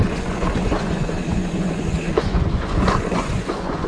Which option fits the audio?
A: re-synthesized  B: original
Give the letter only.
A